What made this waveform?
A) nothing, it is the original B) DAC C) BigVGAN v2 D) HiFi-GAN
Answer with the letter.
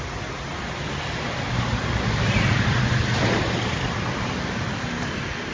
A